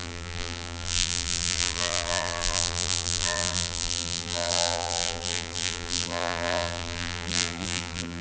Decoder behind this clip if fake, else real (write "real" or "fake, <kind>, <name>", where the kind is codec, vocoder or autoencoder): fake, vocoder, BigVGAN v2